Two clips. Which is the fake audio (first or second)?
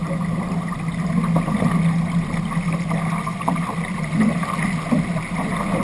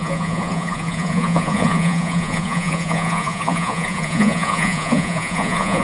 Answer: second